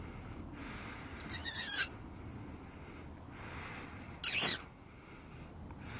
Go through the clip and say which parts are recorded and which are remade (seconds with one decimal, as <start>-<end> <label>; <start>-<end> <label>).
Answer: 0.0-6.0 recorded